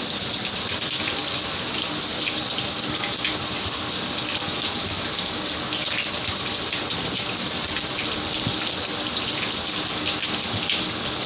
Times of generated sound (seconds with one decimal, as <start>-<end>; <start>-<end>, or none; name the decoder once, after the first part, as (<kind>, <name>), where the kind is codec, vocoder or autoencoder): none